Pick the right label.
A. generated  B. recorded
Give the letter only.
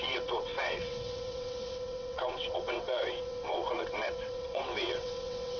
A